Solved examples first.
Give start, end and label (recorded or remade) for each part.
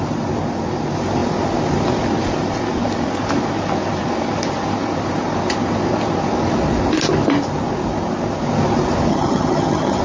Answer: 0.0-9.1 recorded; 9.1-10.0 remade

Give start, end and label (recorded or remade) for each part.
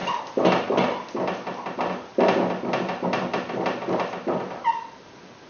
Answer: 0.0-5.5 recorded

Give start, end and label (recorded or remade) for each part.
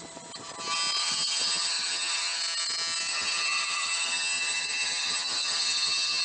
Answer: 0.0-1.0 recorded; 1.0-2.4 remade; 2.4-3.1 recorded; 3.1-6.2 remade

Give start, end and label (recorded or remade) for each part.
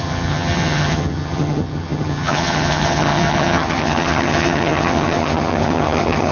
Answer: 0.0-6.3 remade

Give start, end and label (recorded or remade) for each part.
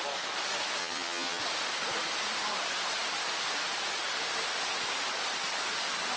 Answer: 0.0-0.8 recorded; 0.8-1.4 remade; 1.4-6.2 recorded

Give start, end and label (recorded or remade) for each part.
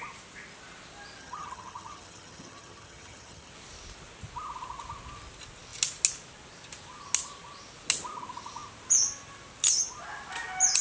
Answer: 0.0-1.2 recorded; 1.2-3.5 remade; 3.5-10.8 recorded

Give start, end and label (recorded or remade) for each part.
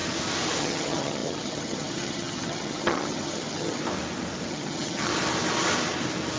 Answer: 0.0-0.6 recorded; 0.6-3.8 remade; 3.8-4.5 recorded; 4.5-5.1 remade; 5.1-6.4 recorded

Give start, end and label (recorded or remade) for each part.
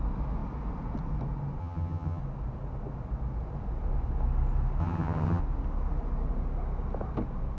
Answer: 0.0-1.6 recorded; 1.6-2.2 remade; 2.2-4.8 recorded; 4.8-5.4 remade; 5.4-7.6 recorded